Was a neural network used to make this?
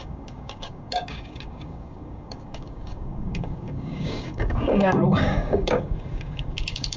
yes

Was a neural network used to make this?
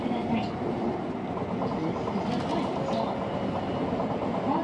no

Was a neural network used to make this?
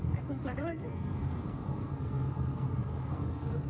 yes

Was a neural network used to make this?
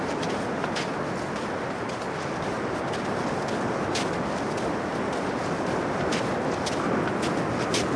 no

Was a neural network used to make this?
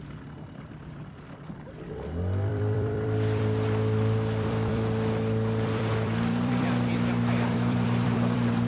yes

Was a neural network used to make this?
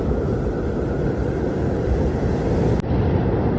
no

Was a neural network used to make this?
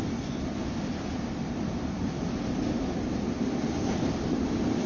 no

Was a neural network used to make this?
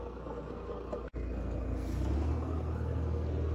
yes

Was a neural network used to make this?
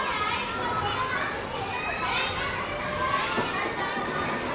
no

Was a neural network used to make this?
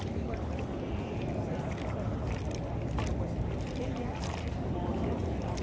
no